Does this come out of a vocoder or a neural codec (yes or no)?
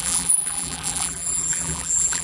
yes